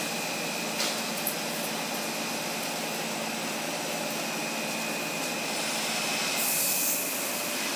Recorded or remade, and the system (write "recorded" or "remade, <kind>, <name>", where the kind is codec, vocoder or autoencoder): recorded